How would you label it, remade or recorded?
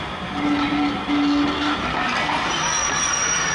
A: recorded